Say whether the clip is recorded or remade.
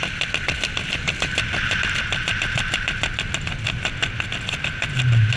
recorded